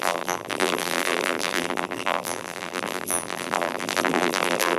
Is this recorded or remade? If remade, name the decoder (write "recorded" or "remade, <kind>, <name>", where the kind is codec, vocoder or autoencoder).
remade, vocoder, BigVGAN v2